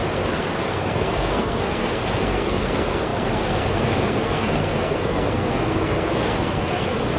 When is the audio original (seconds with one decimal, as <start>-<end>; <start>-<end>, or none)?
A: none